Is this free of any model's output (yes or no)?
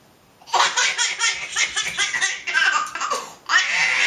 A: yes